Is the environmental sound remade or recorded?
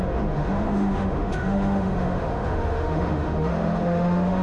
remade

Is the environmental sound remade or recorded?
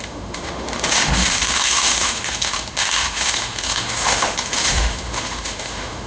remade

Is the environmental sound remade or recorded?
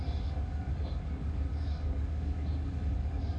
remade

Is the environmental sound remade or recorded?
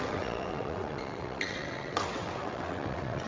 remade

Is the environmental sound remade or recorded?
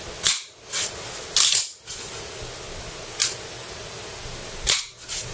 recorded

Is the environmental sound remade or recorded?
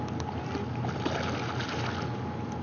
recorded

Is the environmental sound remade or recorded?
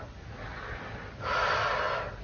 recorded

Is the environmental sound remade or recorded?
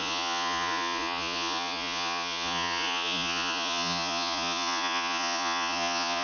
remade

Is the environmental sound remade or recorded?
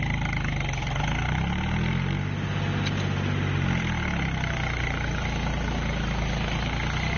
recorded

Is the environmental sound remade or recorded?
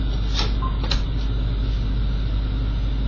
recorded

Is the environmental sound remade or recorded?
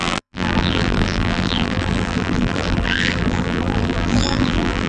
remade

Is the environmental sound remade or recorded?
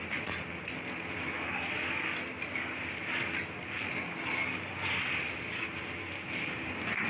recorded